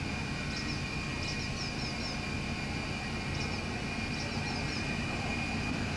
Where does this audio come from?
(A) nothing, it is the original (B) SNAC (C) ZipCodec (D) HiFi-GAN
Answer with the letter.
A